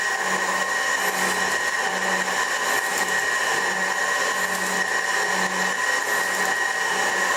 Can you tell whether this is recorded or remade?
recorded